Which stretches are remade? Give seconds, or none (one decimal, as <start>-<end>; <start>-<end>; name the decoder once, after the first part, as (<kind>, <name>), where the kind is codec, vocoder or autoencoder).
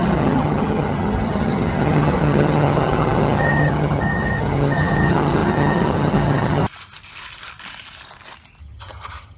0.0-6.6 (vocoder, HiFi-GAN); 8.6-9.4